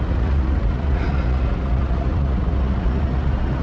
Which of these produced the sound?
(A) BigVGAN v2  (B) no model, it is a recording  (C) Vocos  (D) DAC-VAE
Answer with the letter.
C